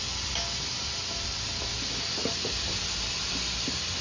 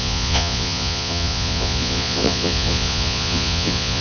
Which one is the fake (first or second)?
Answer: second